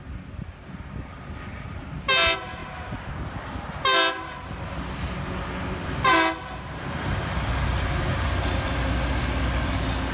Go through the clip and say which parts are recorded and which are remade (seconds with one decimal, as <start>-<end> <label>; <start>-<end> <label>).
0.0-10.1 recorded